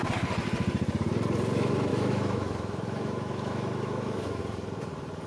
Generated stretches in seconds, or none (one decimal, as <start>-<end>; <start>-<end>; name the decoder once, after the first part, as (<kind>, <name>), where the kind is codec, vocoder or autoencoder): 1.9-4.4 (autoencoder, DAC-VAE)